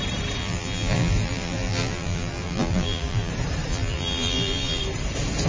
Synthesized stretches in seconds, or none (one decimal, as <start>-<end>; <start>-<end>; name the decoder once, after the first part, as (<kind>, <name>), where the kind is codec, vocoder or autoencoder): 0.4-3.3 (vocoder, BigVGAN v2); 3.7-4.8